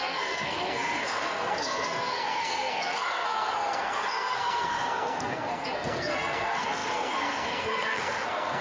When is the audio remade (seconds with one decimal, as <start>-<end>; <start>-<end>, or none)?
0.0-8.6